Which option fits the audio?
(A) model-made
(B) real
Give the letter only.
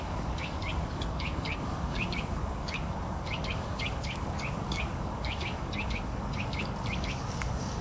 A